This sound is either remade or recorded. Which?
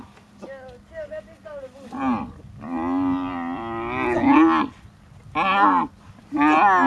recorded